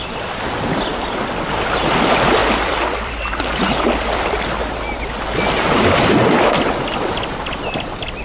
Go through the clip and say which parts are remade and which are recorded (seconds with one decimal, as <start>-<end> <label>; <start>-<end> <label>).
0.0-2.4 recorded; 2.4-4.6 remade; 4.6-8.2 recorded